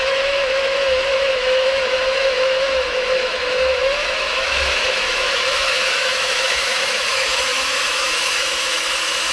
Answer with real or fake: fake